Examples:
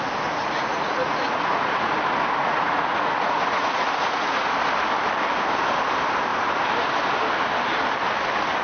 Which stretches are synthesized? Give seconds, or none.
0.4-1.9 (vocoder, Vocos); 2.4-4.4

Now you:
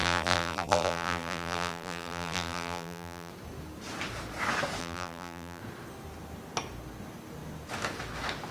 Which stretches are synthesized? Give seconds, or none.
0.0-3.3 (vocoder, BigVGAN v2); 4.8-5.6

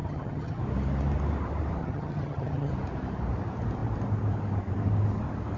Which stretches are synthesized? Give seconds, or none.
0.0-0.6 (vocoder, HiFi-GAN); 1.8-2.7

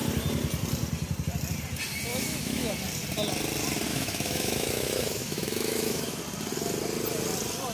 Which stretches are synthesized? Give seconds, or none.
2.1-2.7 (autoencoder, DAC-VAE); 3.9-6.2

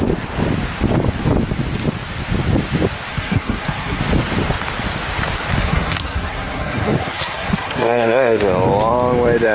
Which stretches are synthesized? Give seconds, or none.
3.1-4.0 (codec, SNAC); 5.6-8.4

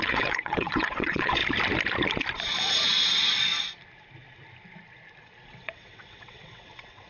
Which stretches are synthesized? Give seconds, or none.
0.0-1.4 (vocoder, WaveNeXt); 5.2-7.1